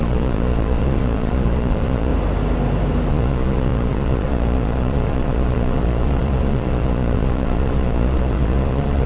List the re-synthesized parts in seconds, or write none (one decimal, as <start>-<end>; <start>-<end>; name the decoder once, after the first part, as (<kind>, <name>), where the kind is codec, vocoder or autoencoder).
0.0-2.1 (vocoder, Vocos); 3.1-9.1